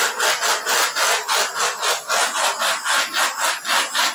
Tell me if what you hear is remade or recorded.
recorded